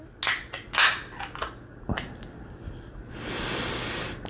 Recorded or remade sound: recorded